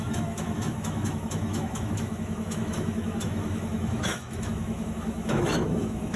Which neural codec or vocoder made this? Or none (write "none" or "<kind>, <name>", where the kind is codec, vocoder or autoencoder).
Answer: autoencoder, DAC-VAE